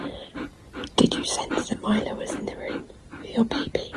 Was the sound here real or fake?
real